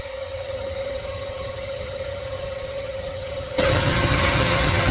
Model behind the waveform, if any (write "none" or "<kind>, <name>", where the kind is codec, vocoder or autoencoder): vocoder, HiFi-GAN